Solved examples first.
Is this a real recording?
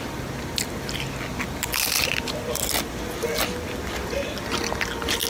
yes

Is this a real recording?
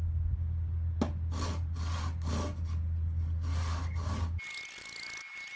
yes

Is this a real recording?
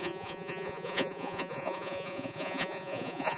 no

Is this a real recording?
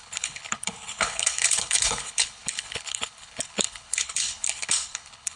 no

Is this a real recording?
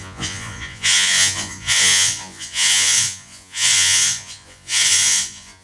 no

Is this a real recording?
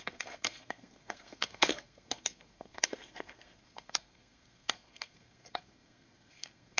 no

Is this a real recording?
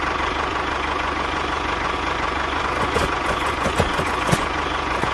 no